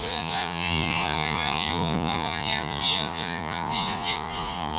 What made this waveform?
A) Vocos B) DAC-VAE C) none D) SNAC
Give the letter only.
A